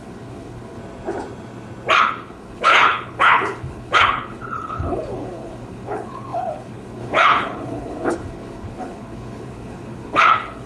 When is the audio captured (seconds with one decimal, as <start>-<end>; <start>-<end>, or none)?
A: 0.8-2.0